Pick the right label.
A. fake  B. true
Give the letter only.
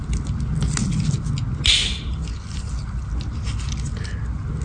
B